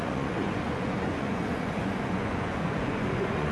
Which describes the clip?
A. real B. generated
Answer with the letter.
B